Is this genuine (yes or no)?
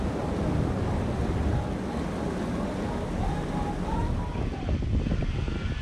yes